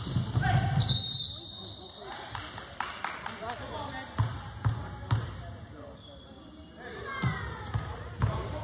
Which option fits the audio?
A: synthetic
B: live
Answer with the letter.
B